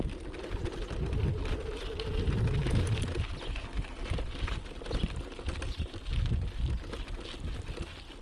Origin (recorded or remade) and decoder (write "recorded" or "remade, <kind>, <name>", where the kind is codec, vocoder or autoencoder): recorded